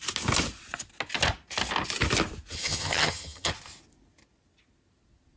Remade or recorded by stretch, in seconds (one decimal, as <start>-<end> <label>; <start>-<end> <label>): 0.0-2.5 recorded; 2.5-3.5 remade; 3.5-5.4 recorded